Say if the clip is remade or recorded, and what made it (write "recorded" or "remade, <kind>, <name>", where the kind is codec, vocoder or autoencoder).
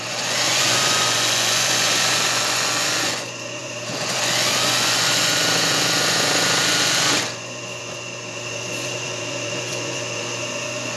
remade, vocoder, Vocos